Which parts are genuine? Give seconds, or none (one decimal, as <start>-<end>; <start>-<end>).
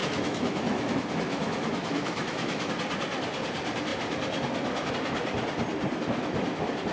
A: 2.7-6.9